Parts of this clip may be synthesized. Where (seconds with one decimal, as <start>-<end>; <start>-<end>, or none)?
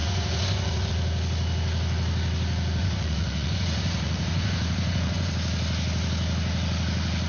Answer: 0.0-0.9; 2.8-5.3